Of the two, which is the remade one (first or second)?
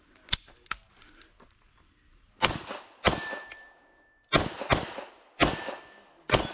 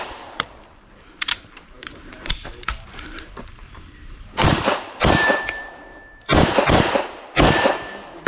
second